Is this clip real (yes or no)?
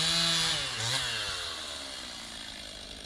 yes